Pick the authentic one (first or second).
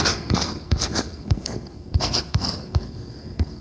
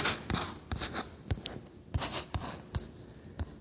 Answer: second